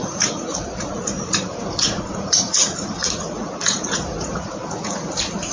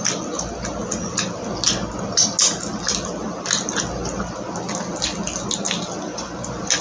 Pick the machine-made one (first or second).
first